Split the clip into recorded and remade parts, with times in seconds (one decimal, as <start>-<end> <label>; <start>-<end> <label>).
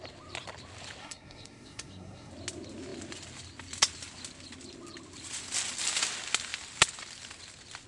0.0-1.0 recorded; 1.0-2.3 remade; 2.3-7.9 recorded